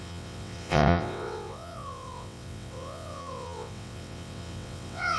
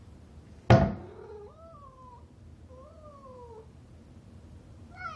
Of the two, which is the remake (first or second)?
first